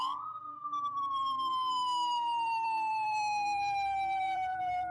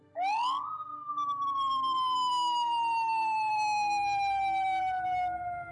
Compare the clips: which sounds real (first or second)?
second